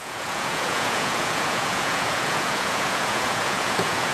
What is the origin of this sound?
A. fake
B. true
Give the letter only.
A